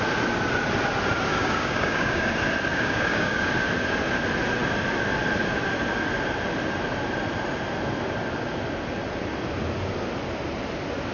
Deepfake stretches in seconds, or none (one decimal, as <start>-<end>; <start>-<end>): 1.3-2.3; 2.7-3.5